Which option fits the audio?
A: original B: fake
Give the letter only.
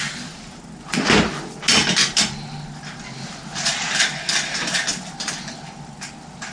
A